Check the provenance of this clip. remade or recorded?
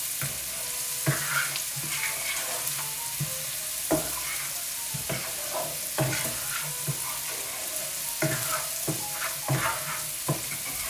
recorded